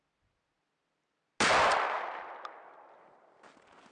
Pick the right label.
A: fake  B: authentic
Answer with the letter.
B